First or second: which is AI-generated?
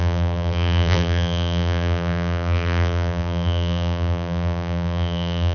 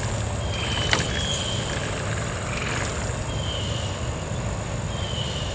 first